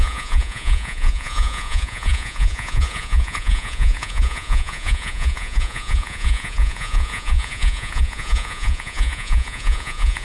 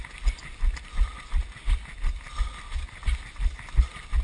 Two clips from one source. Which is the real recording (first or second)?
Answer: second